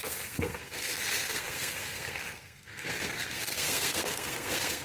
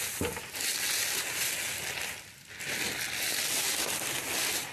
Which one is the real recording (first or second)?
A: second